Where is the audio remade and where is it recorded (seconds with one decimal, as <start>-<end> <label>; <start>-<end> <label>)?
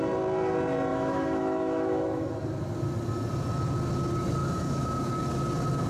0.0-0.9 recorded; 0.9-2.3 remade; 2.3-4.4 recorded; 4.4-5.1 remade; 5.1-5.9 recorded